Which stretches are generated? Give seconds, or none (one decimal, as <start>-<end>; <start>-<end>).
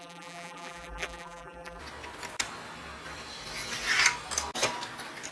0.0-1.8